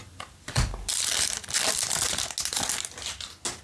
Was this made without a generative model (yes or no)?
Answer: yes